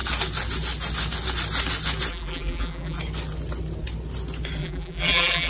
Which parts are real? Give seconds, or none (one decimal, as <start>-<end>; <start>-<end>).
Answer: 0.0-2.1; 3.0-4.6